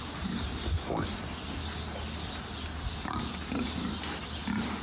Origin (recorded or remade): recorded